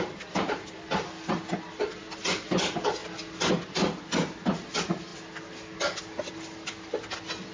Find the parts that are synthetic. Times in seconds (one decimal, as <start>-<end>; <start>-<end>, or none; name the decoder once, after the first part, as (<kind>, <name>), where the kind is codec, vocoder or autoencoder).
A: none